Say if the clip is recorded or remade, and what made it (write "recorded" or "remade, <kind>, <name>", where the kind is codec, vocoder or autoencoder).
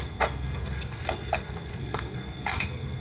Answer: remade, codec, SNAC